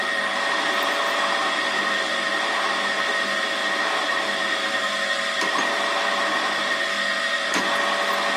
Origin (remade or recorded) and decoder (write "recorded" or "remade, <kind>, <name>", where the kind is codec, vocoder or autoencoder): recorded